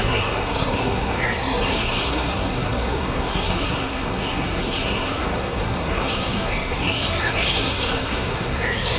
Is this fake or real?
fake